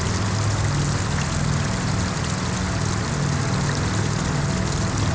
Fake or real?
real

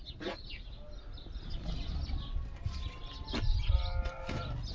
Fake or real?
real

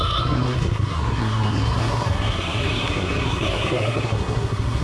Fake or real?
fake